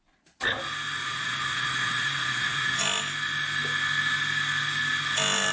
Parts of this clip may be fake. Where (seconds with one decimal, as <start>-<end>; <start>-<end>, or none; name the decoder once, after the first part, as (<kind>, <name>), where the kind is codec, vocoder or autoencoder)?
1.0-2.8 (vocoder, Vocos)